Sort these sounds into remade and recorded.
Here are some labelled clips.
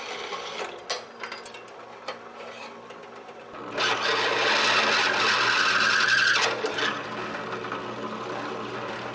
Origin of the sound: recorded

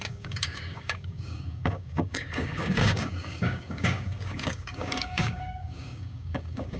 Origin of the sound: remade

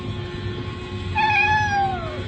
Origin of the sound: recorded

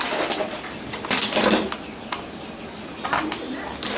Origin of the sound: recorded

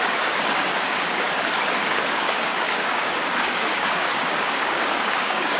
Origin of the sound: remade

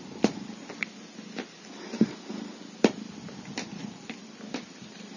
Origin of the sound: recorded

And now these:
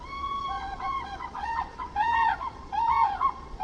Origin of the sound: remade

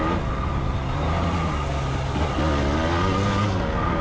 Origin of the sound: recorded